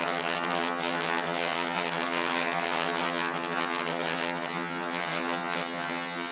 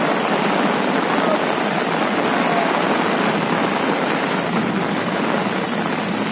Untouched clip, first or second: second